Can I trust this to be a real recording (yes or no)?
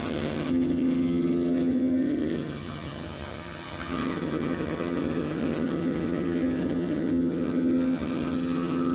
no